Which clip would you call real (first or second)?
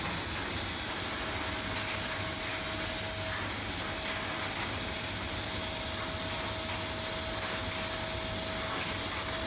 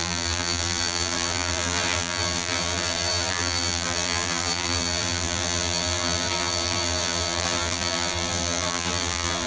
first